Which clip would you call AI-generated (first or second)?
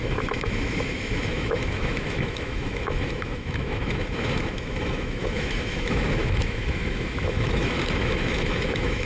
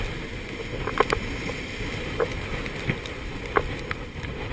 first